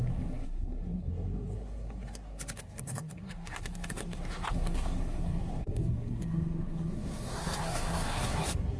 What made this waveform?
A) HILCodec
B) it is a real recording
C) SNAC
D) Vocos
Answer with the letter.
C